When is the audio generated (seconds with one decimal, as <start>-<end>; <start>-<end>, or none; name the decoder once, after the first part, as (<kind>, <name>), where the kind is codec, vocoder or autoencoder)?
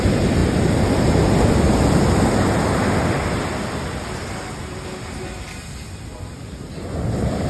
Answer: none